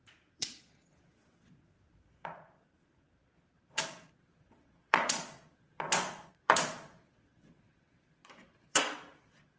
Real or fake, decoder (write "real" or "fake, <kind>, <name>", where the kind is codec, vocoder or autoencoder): fake, vocoder, Vocos